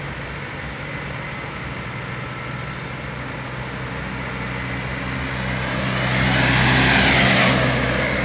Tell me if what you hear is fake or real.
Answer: real